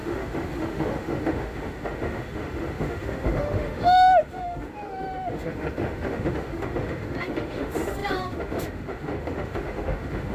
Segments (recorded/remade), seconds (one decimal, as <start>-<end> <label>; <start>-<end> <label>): 0.0-10.3 remade